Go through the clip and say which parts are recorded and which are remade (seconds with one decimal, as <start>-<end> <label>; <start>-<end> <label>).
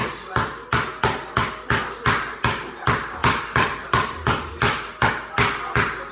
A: 0.0-3.2 recorded; 3.2-5.1 remade; 5.1-6.1 recorded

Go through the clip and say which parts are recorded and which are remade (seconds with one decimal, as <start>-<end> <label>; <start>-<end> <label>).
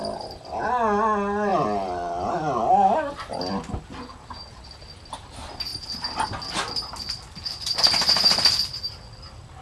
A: 0.0-1.5 recorded; 1.5-2.3 remade; 2.3-9.6 recorded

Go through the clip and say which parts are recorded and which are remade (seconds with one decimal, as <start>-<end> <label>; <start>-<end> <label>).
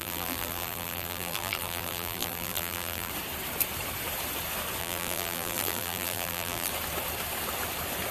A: 0.0-3.1 remade; 3.1-4.8 recorded; 4.8-6.7 remade; 6.7-8.1 recorded